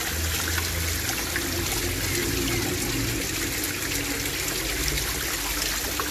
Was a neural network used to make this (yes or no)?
no